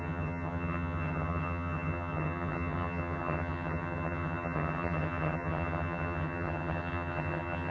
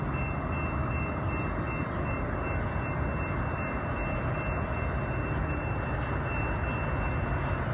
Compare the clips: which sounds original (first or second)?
second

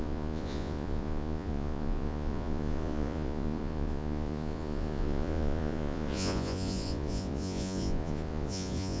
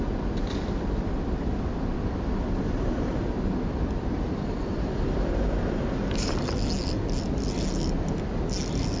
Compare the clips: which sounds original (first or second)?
second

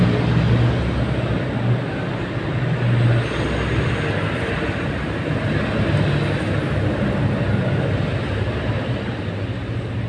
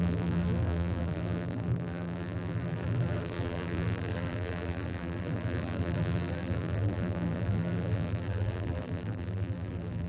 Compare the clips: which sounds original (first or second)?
first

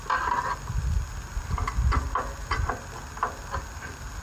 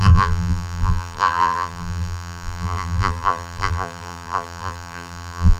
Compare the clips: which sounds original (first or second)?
first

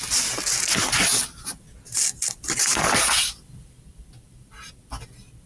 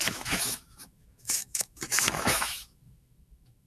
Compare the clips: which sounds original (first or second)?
first